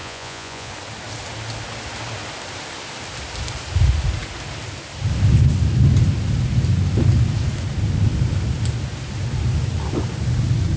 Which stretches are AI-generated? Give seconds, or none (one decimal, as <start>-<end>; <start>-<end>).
0.0-0.7